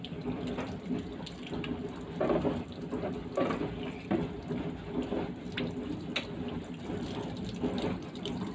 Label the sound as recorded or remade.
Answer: recorded